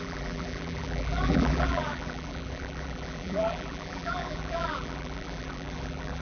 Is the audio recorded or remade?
remade